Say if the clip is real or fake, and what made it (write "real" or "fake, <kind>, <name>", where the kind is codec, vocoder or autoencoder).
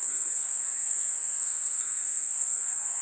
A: fake, codec, SNAC